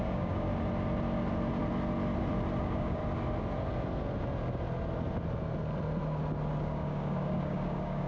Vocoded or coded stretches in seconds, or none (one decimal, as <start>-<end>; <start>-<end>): 0.0-0.5; 2.6-3.0; 6.6-8.1